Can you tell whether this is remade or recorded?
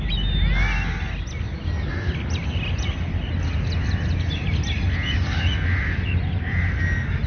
recorded